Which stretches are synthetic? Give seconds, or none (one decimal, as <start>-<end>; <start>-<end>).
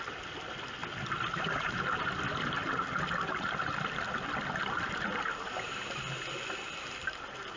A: none